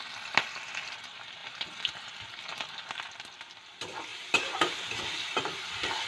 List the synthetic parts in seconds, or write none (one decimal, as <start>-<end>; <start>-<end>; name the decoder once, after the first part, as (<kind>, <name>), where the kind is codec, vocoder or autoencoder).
2.5-3.1 (vocoder, BigVGAN v2); 4.1-4.9